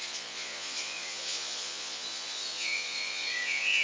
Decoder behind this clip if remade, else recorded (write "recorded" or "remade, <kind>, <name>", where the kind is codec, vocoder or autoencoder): remade, vocoder, Vocos